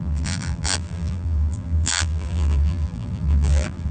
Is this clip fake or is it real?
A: fake